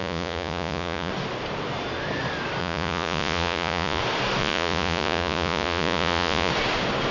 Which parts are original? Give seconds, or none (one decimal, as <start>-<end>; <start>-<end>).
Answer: 1.1-2.6; 4.0-4.4; 6.5-7.1